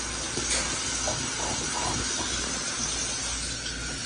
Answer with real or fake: real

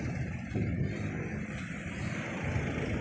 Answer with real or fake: real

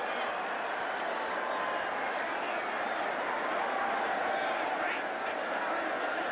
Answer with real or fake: real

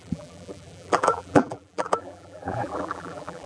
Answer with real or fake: fake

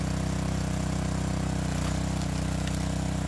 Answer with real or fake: real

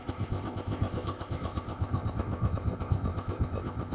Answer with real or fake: fake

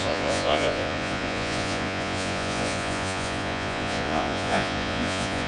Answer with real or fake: fake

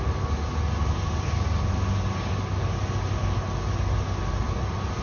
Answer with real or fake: real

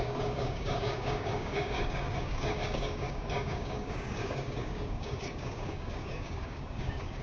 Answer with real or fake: fake